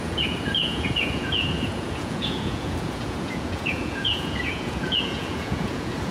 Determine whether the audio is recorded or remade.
remade